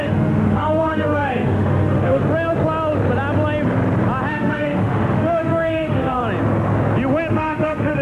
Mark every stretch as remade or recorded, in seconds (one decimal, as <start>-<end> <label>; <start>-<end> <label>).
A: 0.0-2.2 remade; 2.2-4.3 recorded; 4.3-6.2 remade; 6.2-7.3 recorded; 7.3-8.0 remade